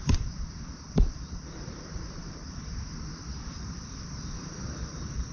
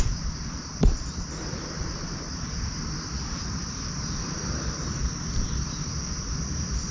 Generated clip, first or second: first